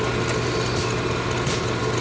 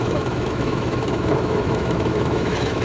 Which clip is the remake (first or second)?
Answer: second